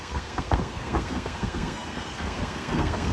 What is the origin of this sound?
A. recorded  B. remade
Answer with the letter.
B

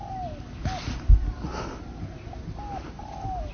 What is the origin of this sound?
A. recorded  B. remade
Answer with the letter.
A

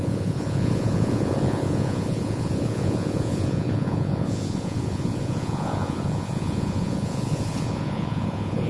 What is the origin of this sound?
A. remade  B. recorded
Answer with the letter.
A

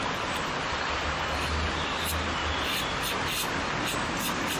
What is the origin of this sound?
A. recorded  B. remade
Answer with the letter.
A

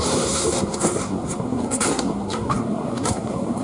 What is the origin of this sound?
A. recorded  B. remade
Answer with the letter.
B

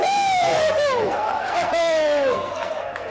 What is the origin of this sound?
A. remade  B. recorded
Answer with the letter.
A